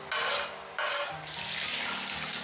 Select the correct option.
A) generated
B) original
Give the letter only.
B